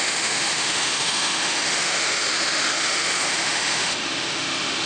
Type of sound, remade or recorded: remade